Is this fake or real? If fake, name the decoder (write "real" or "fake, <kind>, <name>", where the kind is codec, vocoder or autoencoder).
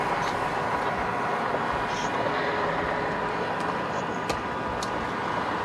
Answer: real